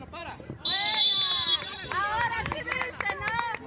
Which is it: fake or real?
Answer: fake